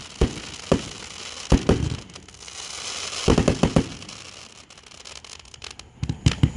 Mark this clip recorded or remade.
recorded